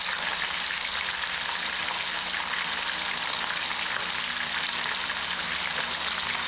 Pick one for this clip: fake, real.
real